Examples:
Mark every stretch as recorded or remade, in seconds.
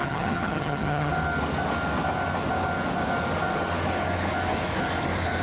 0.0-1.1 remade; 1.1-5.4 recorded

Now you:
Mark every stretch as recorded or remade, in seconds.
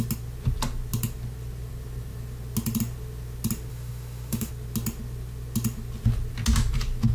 0.0-3.7 recorded; 3.7-4.5 remade; 4.5-7.1 recorded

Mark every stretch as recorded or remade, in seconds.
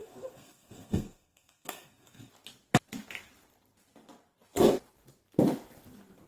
0.0-2.3 remade; 2.3-6.3 recorded